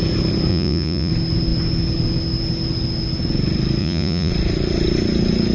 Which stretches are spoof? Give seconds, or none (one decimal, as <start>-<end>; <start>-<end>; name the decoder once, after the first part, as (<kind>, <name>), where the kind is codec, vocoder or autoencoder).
0.5-1.1 (vocoder, Vocos); 3.8-4.3